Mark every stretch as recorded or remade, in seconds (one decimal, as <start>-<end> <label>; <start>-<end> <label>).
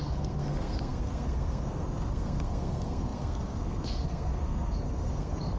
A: 0.0-5.6 remade